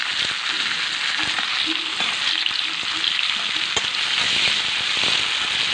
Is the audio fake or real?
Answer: real